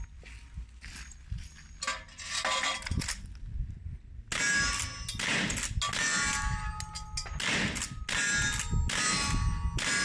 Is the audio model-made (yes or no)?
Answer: no